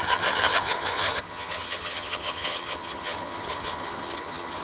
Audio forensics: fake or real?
fake